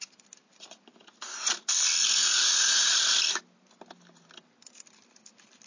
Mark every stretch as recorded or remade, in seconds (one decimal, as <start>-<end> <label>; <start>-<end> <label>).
0.0-2.0 recorded; 2.0-2.8 remade; 2.8-5.7 recorded